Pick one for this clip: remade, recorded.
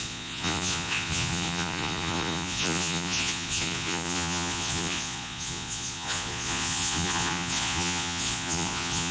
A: remade